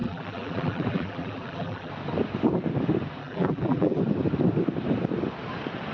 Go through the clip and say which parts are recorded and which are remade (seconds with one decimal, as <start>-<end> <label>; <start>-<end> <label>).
0.0-1.9 remade; 1.9-3.2 recorded; 3.2-4.0 remade; 4.0-5.9 recorded